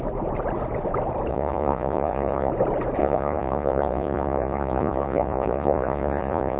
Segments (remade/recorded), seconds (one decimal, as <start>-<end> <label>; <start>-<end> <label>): 0.0-1.3 recorded; 1.3-2.5 remade; 2.5-3.0 recorded; 3.0-6.6 remade